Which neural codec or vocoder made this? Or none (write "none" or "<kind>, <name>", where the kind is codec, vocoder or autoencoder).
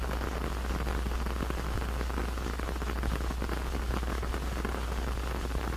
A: none